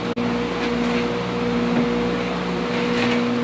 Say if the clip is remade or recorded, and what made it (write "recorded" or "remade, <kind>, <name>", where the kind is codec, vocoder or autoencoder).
recorded